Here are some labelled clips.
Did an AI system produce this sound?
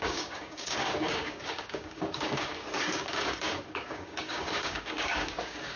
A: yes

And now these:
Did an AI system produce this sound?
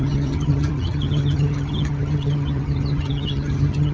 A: yes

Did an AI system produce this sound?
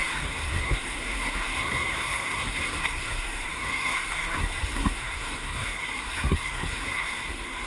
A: yes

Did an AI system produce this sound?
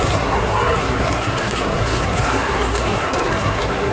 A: yes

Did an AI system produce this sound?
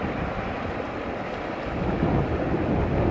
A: no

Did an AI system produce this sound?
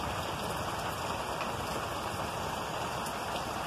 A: no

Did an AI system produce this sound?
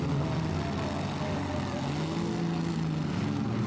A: no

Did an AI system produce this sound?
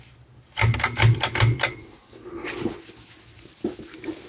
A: no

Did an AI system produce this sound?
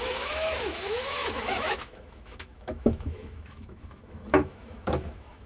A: yes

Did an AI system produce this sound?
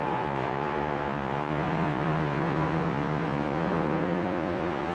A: yes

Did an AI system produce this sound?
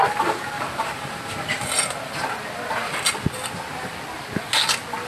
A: no